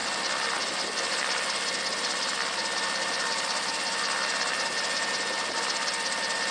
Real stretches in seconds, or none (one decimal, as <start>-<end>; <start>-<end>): 0.0-6.5